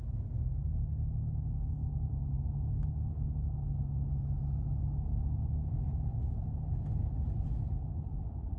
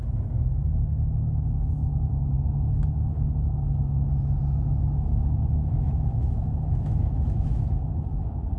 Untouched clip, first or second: first